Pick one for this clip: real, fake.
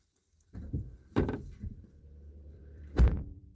fake